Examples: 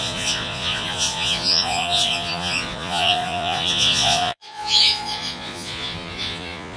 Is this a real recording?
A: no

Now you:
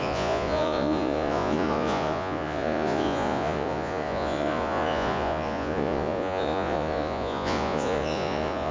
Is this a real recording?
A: no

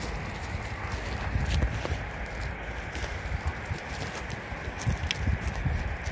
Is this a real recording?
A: yes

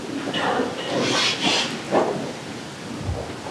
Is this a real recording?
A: yes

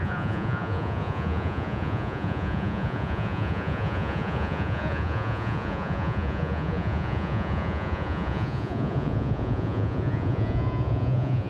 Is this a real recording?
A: no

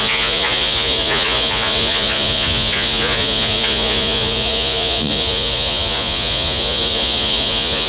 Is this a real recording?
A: no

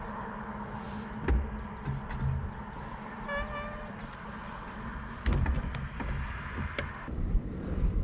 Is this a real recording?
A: yes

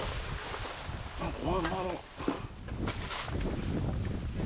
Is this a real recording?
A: yes